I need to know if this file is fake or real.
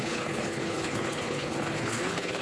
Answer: fake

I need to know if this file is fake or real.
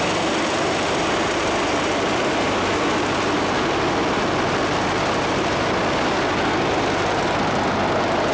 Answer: real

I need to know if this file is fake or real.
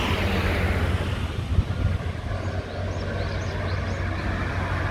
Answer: real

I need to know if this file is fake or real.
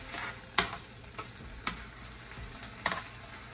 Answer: real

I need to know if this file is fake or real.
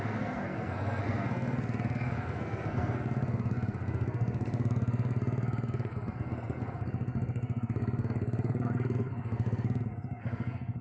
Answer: fake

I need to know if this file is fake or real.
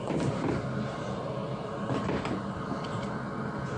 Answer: real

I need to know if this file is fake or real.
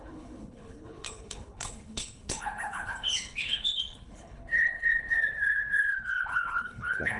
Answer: fake